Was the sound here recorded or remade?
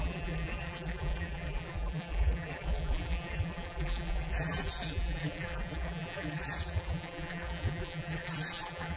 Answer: remade